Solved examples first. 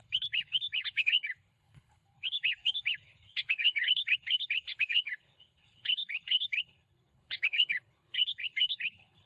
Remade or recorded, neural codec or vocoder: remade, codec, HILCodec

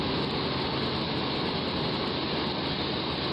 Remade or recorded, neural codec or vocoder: recorded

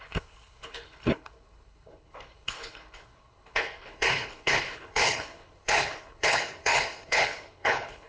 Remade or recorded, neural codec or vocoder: remade, codec, HILCodec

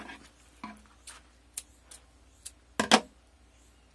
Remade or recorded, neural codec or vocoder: recorded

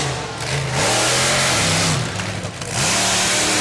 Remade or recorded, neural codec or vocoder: recorded